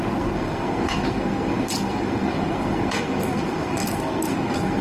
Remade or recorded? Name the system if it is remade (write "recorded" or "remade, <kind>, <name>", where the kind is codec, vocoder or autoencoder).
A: remade, codec, SNAC